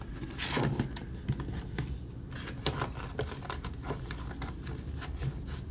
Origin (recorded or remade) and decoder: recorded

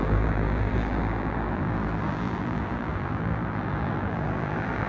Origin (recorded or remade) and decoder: remade, vocoder, BigVGAN v2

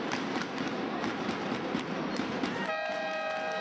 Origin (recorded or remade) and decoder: recorded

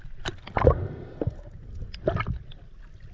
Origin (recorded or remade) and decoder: recorded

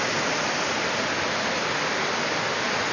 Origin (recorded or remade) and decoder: recorded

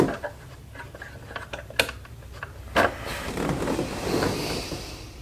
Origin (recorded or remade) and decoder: recorded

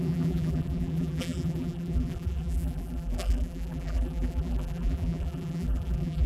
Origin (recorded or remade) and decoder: remade, vocoder, BigVGAN v2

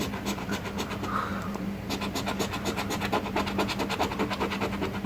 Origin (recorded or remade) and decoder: recorded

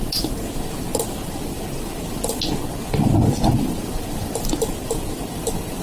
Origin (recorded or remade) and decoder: recorded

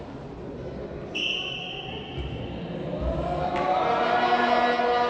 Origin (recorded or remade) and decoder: recorded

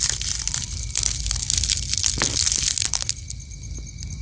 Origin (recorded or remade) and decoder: recorded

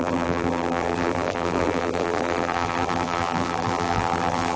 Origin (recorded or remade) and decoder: remade, vocoder, BigVGAN v2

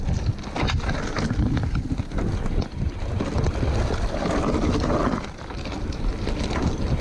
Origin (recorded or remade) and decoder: recorded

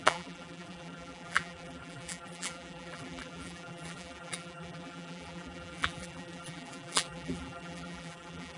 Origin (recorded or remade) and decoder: remade, vocoder, BigVGAN v2